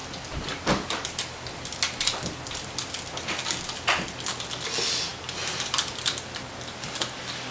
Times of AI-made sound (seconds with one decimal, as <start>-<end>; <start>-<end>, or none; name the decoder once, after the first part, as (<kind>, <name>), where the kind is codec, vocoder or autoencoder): 0.0-4.5 (vocoder, BigVGAN v2)